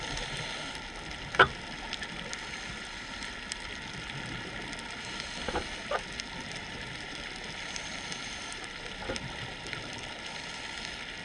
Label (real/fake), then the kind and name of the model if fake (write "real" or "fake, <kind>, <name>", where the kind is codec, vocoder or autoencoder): real